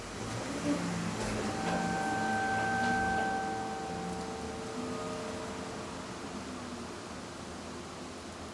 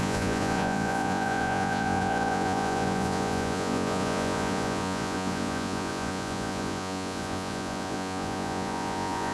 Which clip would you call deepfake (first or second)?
second